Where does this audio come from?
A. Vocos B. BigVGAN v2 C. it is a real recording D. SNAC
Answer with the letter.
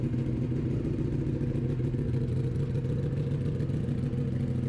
C